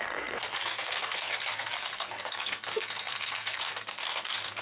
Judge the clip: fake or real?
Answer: fake